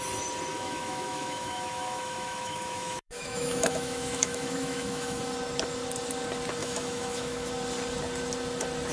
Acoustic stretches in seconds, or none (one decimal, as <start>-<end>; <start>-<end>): 0.0-0.5; 5.2-6.6; 7.5-8.9

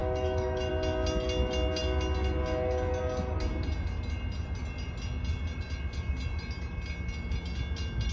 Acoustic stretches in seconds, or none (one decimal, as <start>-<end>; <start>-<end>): 0.7-8.1

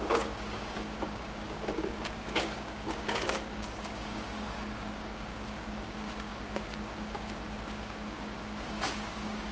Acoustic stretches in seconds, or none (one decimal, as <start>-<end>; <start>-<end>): none

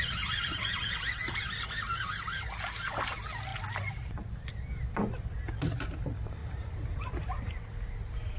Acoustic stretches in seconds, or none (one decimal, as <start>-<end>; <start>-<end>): 0.0-3.5; 4.5-6.4; 7.1-8.4